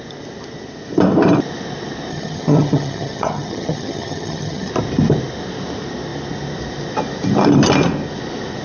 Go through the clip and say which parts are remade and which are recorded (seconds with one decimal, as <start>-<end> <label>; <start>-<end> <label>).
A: 0.0-2.1 recorded; 2.1-4.7 remade; 4.7-8.6 recorded